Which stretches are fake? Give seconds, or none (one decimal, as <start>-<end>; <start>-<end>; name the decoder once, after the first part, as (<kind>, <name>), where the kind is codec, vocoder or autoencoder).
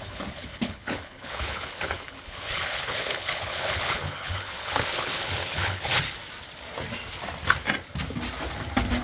0.0-6.2 (codec, HILCodec)